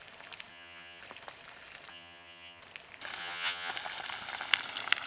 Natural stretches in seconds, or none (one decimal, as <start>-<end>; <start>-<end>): 0.0-0.5; 1.0-1.9; 2.6-3.2; 3.7-5.1